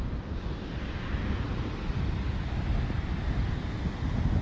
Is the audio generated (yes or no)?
no